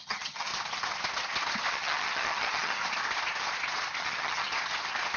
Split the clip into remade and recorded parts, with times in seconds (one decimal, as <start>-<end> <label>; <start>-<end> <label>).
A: 0.0-0.5 remade; 0.5-1.7 recorded; 1.7-2.8 remade; 2.8-4.0 recorded; 4.0-4.5 remade; 4.5-5.2 recorded